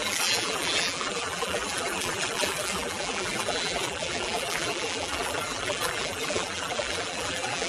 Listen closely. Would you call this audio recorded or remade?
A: remade